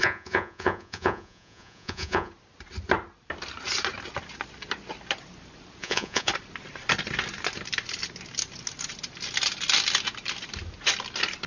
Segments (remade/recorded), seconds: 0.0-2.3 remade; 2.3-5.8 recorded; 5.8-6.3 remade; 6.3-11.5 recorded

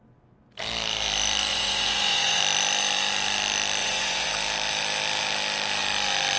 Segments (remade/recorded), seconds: 0.0-1.5 recorded; 1.5-2.4 remade; 2.4-3.8 recorded; 3.8-4.3 remade; 4.3-6.4 recorded

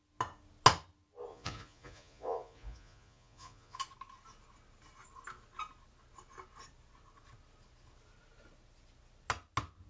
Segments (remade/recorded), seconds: 0.0-1.3 recorded; 1.3-3.8 remade; 3.8-9.9 recorded

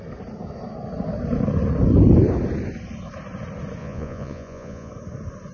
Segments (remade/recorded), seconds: 0.0-3.8 recorded; 3.8-4.9 remade; 4.9-5.5 recorded

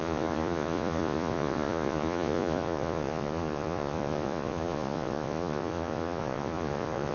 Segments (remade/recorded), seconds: 0.0-7.1 remade

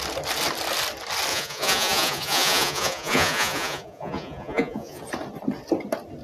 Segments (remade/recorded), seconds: 0.0-1.3 recorded; 1.3-5.0 remade; 5.0-6.2 recorded

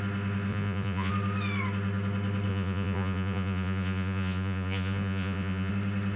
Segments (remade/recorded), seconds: 0.0-0.5 recorded; 0.5-1.1 remade; 1.1-2.5 recorded; 2.5-5.7 remade; 5.7-6.2 recorded